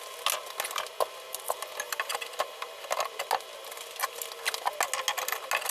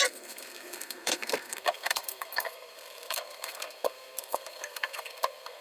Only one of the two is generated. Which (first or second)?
second